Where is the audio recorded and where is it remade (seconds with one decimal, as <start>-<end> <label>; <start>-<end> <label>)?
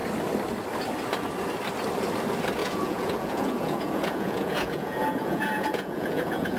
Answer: 0.0-2.6 recorded; 2.6-6.6 remade